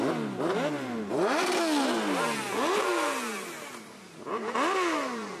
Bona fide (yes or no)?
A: yes